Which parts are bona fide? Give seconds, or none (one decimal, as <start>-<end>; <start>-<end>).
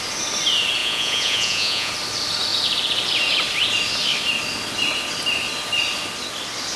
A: 0.0-0.8; 1.9-6.8